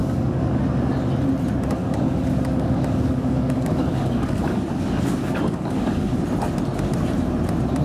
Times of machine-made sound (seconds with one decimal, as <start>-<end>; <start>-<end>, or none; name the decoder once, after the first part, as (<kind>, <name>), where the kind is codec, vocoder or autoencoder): 0.0-0.6 (codec, DAC); 1.8-6.2